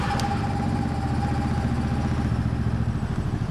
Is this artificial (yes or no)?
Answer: no